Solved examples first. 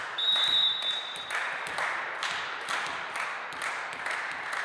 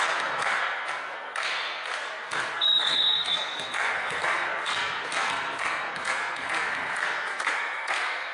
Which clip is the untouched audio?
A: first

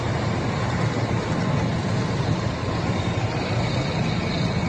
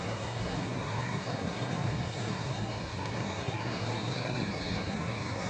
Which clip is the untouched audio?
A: first